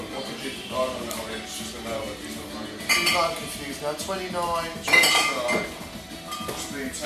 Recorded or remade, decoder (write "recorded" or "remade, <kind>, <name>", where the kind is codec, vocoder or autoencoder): recorded